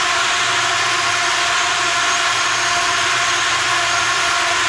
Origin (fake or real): real